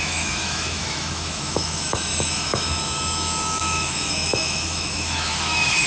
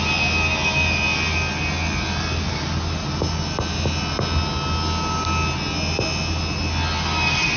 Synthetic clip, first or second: first